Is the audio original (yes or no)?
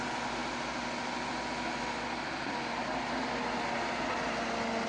yes